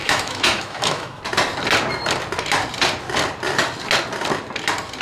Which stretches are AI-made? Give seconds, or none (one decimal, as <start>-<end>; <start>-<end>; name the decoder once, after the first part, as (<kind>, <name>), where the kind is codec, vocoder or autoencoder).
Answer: 0.0-1.2 (autoencoder, DAC-VAE)